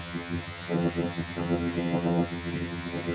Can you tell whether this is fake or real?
fake